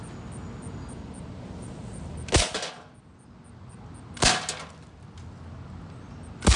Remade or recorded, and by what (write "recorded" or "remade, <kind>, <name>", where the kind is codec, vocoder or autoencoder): recorded